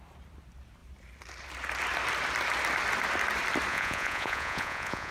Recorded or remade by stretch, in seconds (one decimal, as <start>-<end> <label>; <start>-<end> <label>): 0.0-3.7 recorded; 3.7-5.1 remade